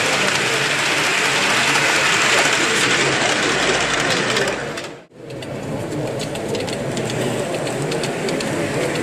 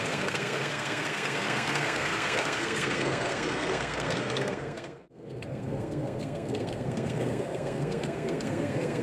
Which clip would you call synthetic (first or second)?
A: second